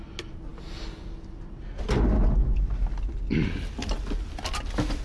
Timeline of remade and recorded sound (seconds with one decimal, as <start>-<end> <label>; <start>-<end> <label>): 0.0-5.0 recorded